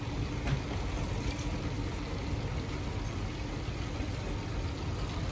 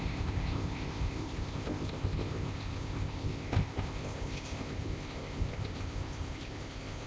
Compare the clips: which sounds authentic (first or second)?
first